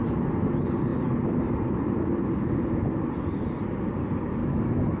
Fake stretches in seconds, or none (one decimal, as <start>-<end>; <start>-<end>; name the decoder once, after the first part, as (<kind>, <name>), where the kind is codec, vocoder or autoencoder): 4.4-5.0 (autoencoder, DAC-VAE)